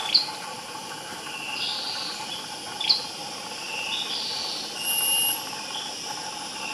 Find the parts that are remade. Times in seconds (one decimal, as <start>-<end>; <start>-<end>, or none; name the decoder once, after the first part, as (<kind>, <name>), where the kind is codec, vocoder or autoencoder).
none